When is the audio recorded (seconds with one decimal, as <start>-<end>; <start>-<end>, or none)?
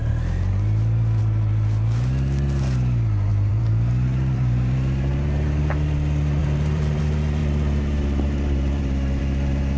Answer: 0.0-3.3; 5.6-6.4; 7.0-7.4; 9.2-9.8